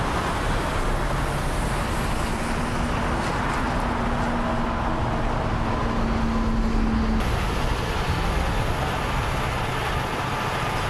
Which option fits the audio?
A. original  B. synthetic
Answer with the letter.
A